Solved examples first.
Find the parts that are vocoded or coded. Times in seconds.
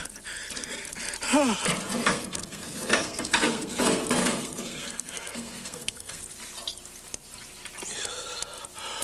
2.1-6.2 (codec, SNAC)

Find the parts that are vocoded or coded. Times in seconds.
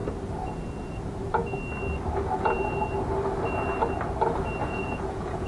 4.6-5.5 (vocoder, Vocos)